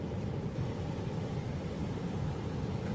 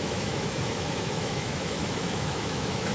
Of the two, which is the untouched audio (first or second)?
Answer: first